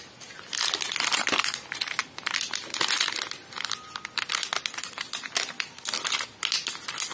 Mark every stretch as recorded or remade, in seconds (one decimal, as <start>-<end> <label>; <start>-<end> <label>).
0.0-7.1 recorded